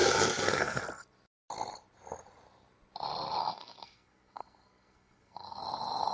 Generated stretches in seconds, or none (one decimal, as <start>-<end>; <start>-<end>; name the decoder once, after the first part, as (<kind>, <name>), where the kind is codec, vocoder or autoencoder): 0.0-0.8 (codec, SNAC); 3.4-5.6